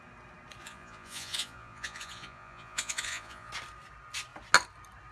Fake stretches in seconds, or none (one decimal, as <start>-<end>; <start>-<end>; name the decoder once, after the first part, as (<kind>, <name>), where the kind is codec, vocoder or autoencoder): 0.6-3.5 (vocoder, Vocos)